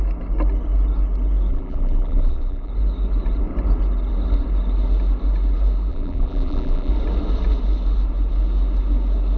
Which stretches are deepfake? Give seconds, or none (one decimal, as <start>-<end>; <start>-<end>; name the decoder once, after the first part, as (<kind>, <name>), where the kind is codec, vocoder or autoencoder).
1.5-2.7 (vocoder, BigVGAN v2); 5.9-6.9